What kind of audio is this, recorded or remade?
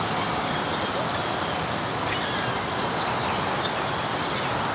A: recorded